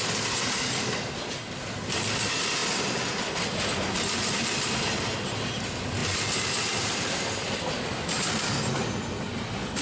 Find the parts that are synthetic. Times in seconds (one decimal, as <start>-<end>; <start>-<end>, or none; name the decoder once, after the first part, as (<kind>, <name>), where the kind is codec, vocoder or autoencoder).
none